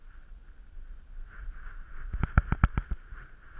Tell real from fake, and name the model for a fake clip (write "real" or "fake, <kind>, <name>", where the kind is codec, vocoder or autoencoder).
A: real